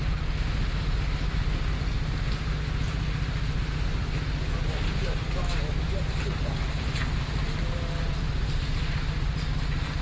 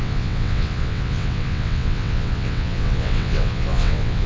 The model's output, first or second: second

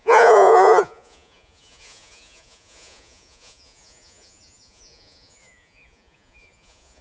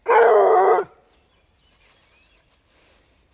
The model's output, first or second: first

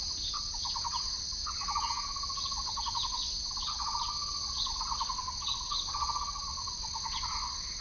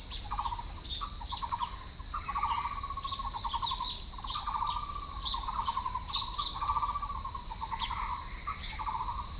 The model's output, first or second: first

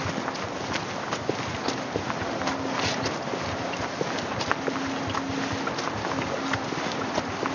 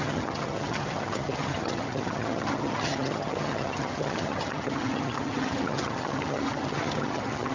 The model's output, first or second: second